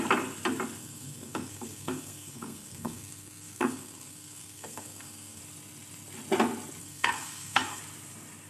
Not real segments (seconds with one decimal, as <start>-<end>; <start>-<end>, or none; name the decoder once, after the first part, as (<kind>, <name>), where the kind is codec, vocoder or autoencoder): 0.8-5.4 (codec, SNAC); 6.8-7.8